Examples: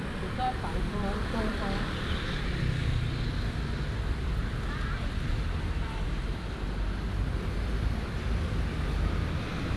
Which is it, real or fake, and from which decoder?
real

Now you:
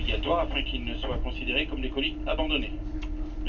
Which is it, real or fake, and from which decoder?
real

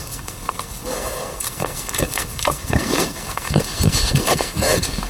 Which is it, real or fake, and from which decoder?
fake, codec, SNAC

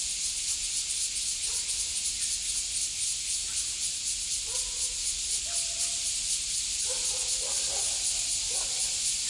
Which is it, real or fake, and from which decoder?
real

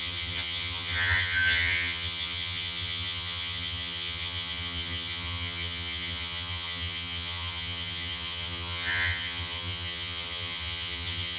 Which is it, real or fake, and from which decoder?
fake, vocoder, HiFi-GAN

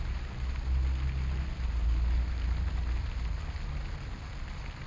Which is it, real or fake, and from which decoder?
real